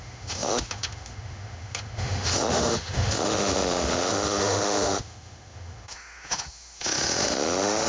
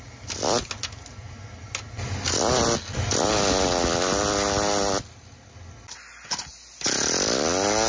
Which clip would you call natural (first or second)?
second